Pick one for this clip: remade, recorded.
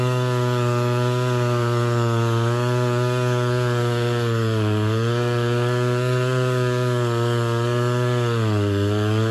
remade